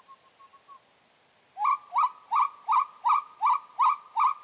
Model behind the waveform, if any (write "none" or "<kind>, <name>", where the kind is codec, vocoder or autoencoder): none